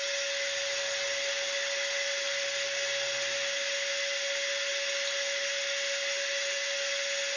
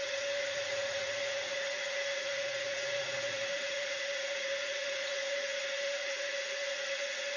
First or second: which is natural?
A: first